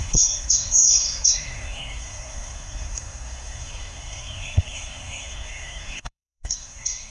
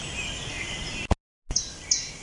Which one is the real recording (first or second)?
second